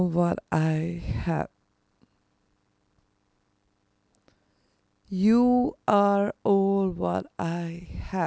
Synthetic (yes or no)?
no